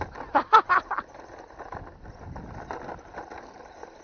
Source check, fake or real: real